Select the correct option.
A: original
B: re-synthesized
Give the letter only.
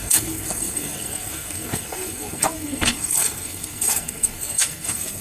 B